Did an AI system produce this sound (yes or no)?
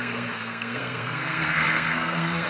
yes